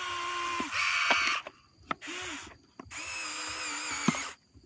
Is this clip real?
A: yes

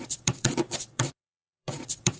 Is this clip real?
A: no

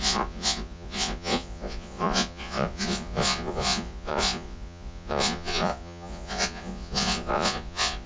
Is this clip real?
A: no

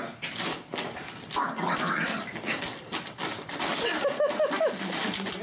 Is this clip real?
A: yes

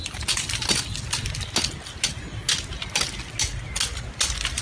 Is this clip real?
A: yes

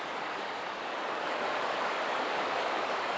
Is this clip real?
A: no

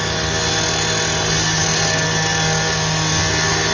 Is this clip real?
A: yes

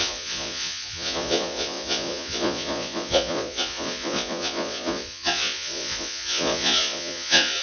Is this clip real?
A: no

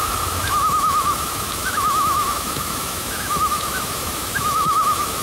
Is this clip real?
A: no